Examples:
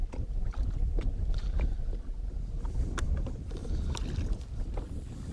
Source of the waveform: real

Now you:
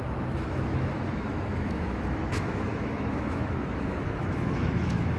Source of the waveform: fake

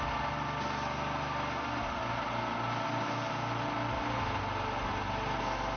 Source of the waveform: real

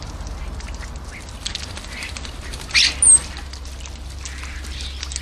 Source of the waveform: real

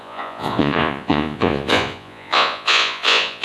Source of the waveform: fake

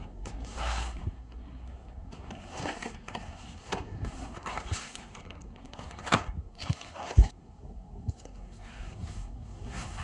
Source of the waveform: fake